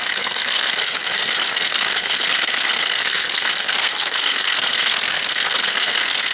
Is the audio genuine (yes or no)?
no